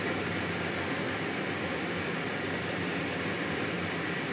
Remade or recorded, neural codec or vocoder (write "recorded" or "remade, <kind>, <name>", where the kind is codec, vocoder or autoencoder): recorded